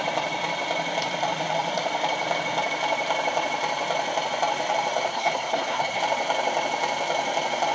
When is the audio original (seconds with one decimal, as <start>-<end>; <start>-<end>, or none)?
0.0-5.1; 6.0-7.7